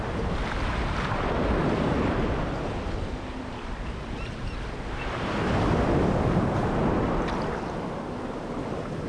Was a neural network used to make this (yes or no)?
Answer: no